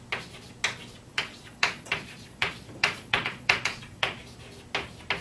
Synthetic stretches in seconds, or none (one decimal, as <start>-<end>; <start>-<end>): 1.1-4.2